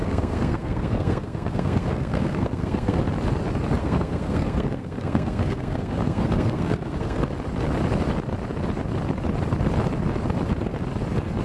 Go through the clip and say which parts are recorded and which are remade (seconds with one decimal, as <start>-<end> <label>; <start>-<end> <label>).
0.0-3.0 remade; 3.0-3.8 recorded; 3.8-7.2 remade; 7.2-11.4 recorded